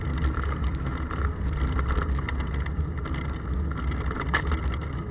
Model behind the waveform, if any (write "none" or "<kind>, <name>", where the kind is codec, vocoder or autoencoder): none